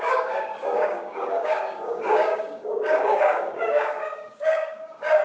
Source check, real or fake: fake